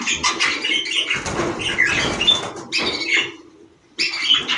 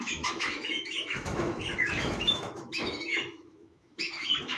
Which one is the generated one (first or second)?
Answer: second